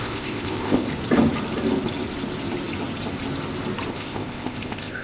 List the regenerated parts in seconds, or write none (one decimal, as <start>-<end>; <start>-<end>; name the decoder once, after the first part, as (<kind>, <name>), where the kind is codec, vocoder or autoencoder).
0.0-0.9 (codec, ZipCodec); 3.9-5.0